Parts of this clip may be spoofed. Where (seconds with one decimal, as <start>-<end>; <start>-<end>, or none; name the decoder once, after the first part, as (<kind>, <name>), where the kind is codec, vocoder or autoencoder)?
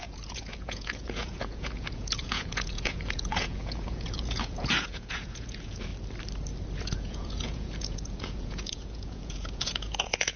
0.0-5.9 (vocoder, Vocos); 6.8-10.4